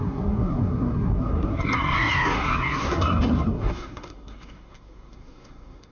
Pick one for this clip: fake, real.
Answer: fake